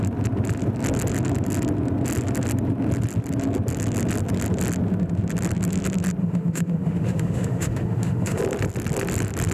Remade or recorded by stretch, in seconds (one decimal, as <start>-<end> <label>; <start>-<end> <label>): 0.0-6.2 recorded; 6.2-8.4 remade; 8.4-9.5 recorded